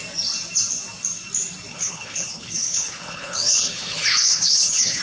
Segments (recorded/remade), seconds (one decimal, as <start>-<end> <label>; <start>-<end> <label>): 0.0-1.7 recorded; 1.7-5.0 remade